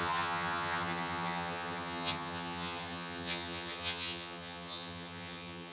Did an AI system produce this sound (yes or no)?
yes